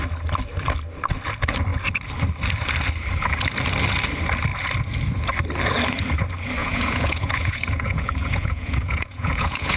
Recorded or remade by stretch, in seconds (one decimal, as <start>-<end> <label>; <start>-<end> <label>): 0.0-6.6 recorded; 6.6-9.8 remade